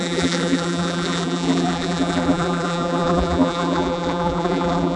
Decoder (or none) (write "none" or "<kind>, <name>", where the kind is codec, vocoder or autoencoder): vocoder, BigVGAN v2